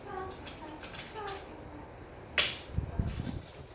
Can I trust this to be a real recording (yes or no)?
yes